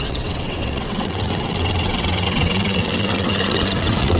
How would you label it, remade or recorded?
remade